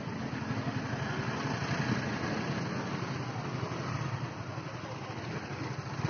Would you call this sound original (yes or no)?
yes